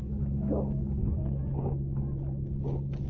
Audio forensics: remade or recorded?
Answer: recorded